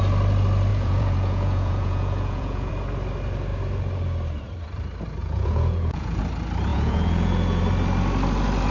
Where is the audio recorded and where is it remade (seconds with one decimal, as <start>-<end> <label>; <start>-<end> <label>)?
0.0-0.7 recorded; 0.7-2.7 remade; 2.7-5.2 recorded; 5.2-6.2 remade; 6.2-6.7 recorded; 6.7-7.6 remade; 7.6-8.7 recorded